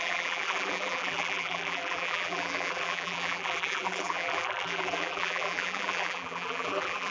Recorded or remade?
remade